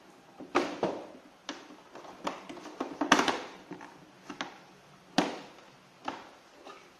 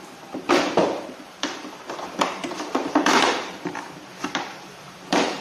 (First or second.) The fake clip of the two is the second